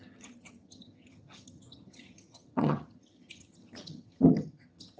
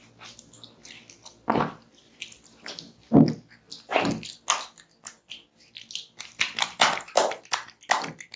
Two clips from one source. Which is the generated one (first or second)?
first